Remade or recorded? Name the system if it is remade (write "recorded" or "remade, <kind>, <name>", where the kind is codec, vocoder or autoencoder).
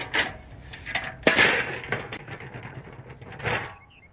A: recorded